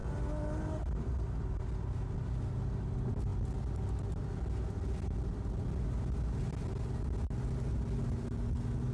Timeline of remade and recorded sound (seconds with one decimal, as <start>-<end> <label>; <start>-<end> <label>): 0.0-8.9 recorded